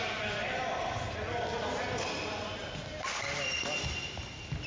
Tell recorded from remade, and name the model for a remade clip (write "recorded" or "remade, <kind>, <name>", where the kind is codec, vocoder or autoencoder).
recorded